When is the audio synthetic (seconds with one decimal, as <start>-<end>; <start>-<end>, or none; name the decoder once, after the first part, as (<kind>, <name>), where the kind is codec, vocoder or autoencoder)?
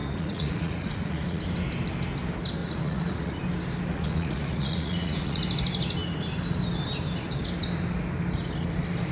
0.0-1.4 (vocoder, Vocos); 2.6-3.4; 3.9-5.4